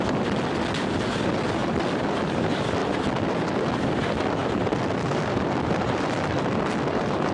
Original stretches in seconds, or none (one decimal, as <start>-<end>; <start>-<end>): 0.0-1.6; 2.4-7.3